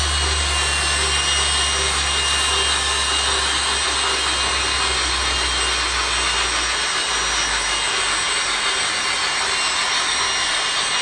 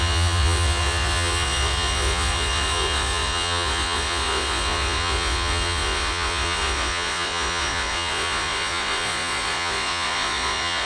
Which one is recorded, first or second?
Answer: first